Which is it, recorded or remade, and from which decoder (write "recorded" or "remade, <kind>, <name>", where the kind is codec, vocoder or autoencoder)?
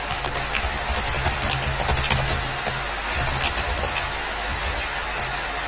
recorded